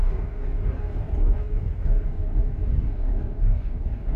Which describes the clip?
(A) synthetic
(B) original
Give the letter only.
A